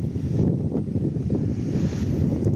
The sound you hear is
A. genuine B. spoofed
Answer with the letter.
A